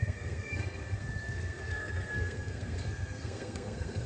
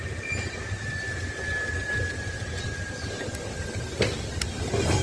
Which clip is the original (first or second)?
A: second